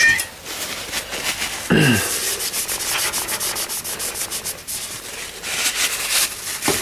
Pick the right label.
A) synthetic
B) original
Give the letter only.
B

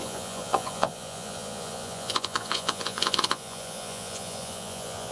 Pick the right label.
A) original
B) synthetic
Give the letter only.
B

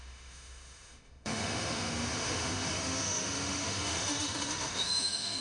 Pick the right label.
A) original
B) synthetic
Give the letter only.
B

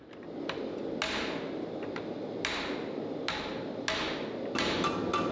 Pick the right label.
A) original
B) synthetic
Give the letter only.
A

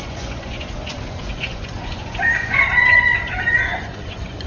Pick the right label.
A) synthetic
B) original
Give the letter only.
A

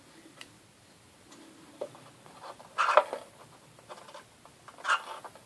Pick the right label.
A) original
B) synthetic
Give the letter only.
A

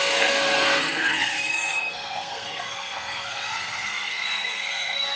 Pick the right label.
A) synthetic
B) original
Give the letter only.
A